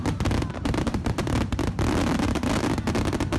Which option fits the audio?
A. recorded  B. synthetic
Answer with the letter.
A